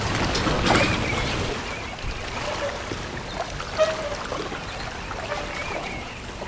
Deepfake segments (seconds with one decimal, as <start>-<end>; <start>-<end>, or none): 5.6-6.1